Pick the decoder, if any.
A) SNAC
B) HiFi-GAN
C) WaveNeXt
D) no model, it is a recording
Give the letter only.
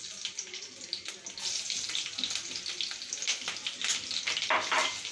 D